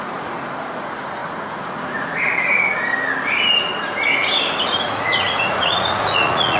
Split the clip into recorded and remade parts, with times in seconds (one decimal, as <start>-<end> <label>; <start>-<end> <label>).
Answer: 0.0-2.5 remade; 2.5-4.7 recorded; 4.7-6.6 remade